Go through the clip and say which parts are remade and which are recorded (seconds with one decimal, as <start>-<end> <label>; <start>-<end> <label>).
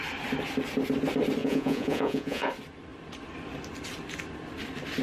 0.0-1.4 recorded; 1.4-2.5 remade; 2.5-5.0 recorded